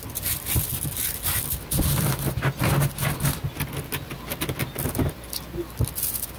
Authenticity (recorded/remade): recorded